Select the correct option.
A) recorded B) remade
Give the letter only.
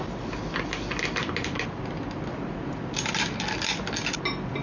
A